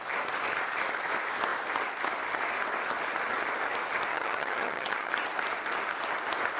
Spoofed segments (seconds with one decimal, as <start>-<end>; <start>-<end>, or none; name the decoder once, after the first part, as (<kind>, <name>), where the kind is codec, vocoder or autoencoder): 4.1-5.1 (vocoder, HiFi-GAN)